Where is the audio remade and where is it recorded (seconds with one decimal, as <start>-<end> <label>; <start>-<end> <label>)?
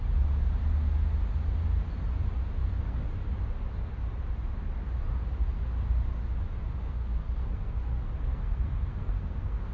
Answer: 0.0-2.6 recorded; 2.6-3.1 remade; 3.1-6.8 recorded; 6.8-9.7 remade